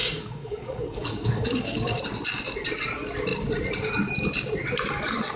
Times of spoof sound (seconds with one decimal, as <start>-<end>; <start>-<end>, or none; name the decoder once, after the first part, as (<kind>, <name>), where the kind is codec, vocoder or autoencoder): 0.0-2.0 (codec, DAC)